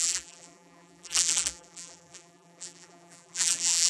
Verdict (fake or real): fake